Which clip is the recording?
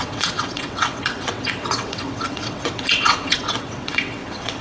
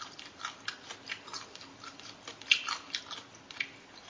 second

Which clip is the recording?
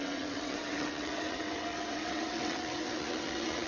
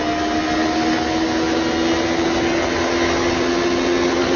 second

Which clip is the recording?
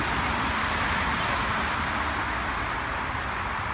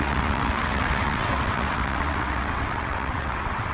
first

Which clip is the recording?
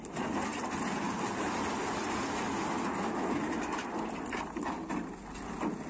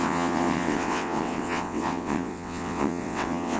first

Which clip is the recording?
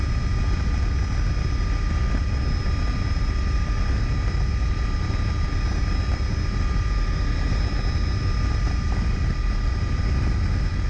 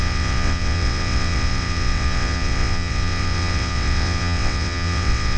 first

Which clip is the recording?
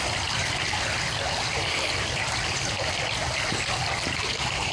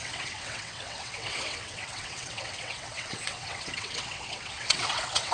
first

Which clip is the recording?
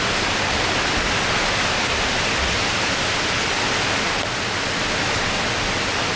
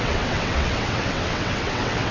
first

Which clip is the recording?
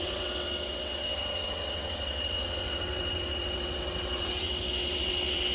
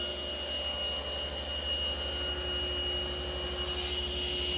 second